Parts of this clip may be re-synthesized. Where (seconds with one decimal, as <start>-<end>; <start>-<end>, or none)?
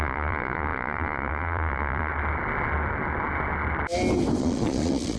0.0-2.1; 4.4-5.2